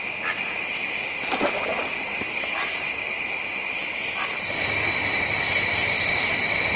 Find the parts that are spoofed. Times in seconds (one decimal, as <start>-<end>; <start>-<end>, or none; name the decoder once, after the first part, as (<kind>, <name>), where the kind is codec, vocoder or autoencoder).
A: 1.7-5.8 (vocoder, BigVGAN v2)